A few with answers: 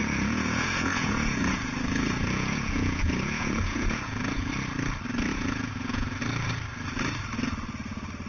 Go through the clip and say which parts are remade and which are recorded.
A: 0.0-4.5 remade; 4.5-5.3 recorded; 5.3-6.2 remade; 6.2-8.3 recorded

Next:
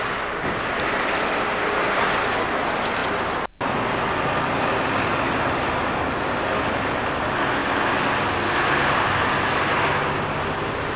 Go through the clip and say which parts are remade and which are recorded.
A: 0.0-11.0 recorded

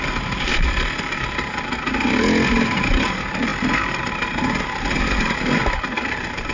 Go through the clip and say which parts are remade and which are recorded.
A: 0.0-6.5 recorded

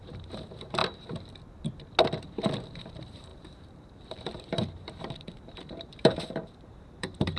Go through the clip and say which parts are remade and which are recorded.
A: 0.0-0.8 remade; 0.8-2.9 recorded; 2.9-7.4 remade